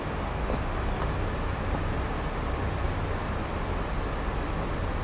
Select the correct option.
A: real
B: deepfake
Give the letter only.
A